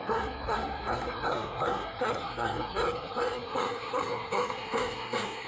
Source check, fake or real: fake